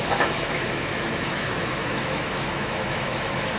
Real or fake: fake